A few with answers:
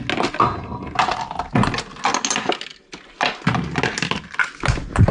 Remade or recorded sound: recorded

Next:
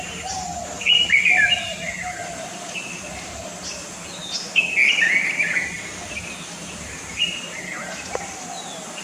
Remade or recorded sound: remade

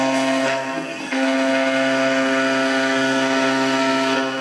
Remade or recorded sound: remade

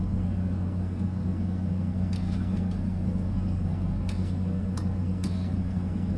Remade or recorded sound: remade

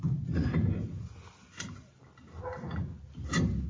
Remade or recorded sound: recorded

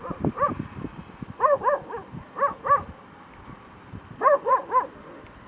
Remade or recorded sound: remade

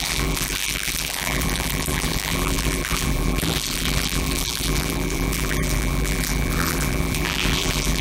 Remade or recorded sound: remade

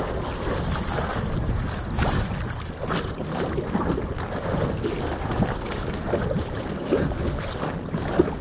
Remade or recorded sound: recorded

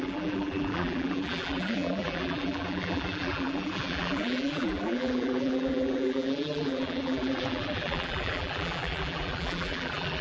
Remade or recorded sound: remade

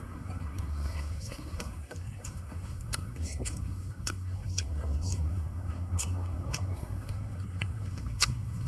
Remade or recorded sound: remade